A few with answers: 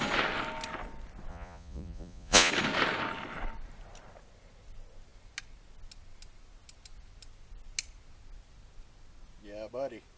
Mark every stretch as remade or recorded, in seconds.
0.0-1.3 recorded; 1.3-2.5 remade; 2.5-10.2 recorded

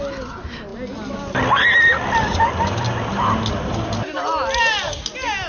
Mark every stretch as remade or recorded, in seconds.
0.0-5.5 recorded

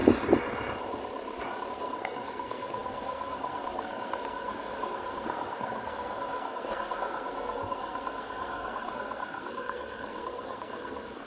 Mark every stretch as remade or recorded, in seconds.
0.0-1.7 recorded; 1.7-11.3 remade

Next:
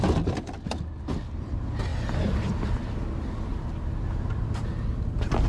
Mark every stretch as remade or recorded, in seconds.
0.0-5.5 recorded

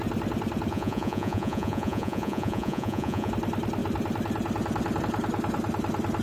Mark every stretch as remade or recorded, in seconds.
0.0-0.7 recorded; 0.7-3.3 remade; 3.3-6.2 recorded

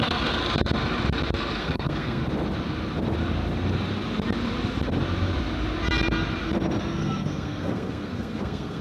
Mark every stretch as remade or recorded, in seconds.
0.0-0.4 remade; 0.4-1.6 recorded; 1.6-2.2 remade; 2.2-6.8 recorded; 6.8-8.8 remade

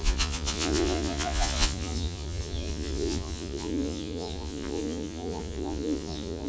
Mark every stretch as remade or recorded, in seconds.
0.0-6.5 remade

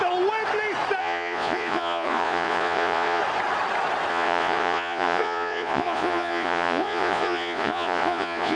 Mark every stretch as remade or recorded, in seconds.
0.0-1.0 recorded; 1.0-3.2 remade; 3.2-4.1 recorded; 4.1-8.6 remade